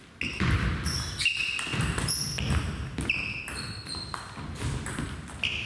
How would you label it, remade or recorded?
recorded